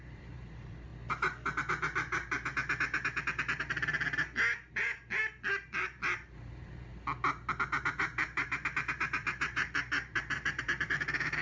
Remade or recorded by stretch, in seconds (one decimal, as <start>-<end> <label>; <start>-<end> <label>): 0.0-0.9 remade; 0.9-5.5 recorded; 5.5-6.9 remade; 6.9-7.8 recorded; 7.8-11.4 remade

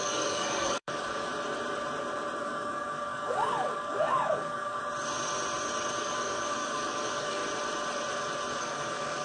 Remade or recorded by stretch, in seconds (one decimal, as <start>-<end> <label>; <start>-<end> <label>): 0.0-1.3 remade; 1.3-2.4 recorded; 2.4-4.8 remade; 4.8-6.0 recorded; 6.0-7.4 remade; 7.4-8.6 recorded; 8.6-9.2 remade

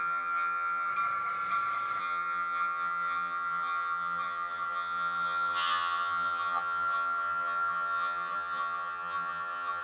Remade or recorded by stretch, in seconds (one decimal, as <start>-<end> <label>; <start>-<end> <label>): 0.0-0.9 remade; 0.9-2.0 recorded; 2.0-9.8 remade